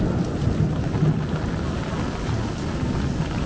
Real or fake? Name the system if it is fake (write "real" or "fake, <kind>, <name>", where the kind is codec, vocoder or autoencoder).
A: real